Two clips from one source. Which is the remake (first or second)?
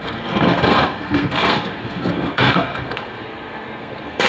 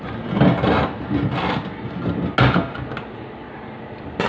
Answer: first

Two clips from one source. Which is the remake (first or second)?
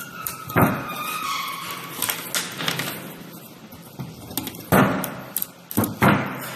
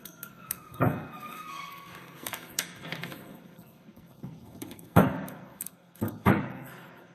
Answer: second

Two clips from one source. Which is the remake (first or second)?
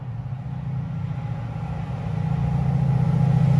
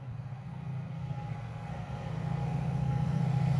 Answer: second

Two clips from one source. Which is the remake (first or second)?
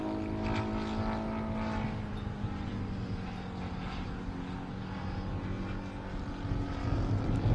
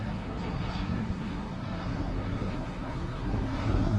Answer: second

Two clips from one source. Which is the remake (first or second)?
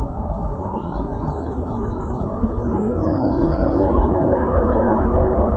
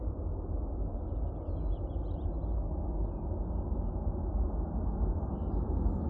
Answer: first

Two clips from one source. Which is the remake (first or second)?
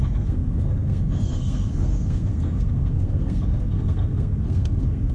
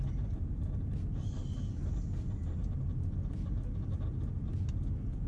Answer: first